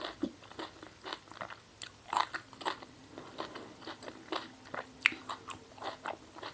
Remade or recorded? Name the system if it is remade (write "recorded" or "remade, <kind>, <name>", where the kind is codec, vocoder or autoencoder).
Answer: recorded